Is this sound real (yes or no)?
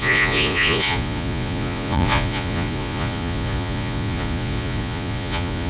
no